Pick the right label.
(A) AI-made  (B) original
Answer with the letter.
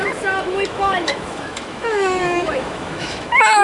A